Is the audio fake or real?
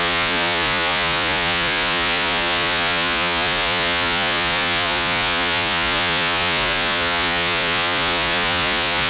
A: fake